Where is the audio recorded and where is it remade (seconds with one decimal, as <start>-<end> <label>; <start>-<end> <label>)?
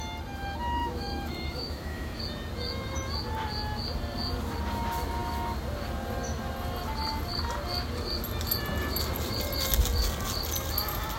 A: 0.0-0.8 recorded; 0.8-2.2 remade; 2.2-11.2 recorded